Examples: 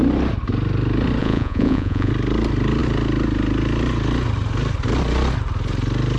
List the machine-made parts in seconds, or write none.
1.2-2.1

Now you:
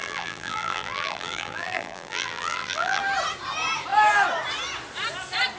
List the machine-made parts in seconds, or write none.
0.0-3.0

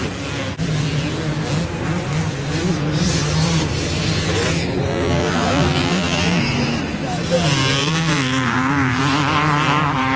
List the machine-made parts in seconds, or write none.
4.9-6.4; 7.8-9.0

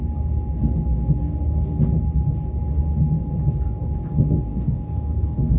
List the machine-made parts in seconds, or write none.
4.5-5.6

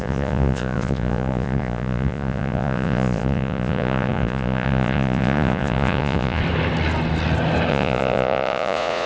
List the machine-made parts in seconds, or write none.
0.0-6.4; 7.7-9.1

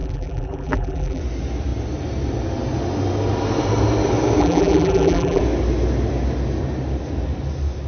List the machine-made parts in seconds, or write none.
0.0-1.2; 4.4-5.4

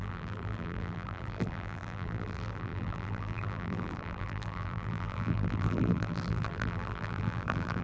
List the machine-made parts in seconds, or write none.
0.0-7.8